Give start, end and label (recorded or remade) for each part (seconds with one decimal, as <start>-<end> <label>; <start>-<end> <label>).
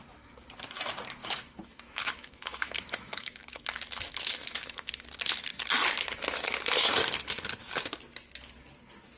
0.0-1.2 recorded; 1.2-4.9 remade; 4.9-9.2 recorded